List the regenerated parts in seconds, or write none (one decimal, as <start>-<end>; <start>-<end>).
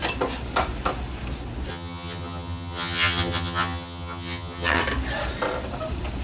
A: 1.7-4.8